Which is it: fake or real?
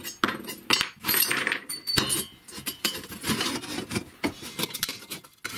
real